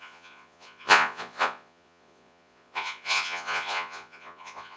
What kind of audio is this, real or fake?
fake